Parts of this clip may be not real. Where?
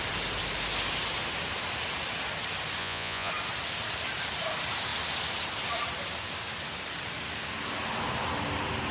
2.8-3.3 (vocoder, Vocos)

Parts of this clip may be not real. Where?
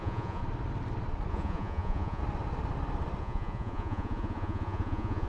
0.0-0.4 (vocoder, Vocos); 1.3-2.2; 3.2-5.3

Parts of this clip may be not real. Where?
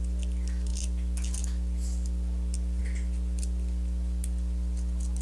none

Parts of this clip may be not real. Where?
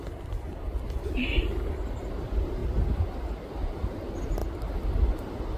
none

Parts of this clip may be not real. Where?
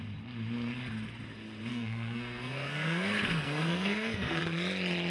1.7-4.4 (codec, SNAC)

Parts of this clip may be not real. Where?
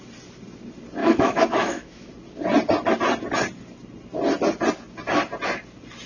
1.0-2.1 (autoencoder, DAC-VAE)